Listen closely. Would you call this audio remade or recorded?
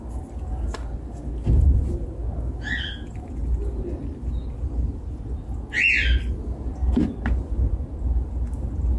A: recorded